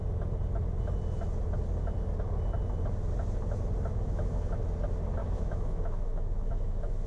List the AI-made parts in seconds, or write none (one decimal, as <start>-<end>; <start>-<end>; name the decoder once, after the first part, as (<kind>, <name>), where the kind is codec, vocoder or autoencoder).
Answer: 3.9-4.6 (autoencoder, DAC-VAE); 5.2-7.1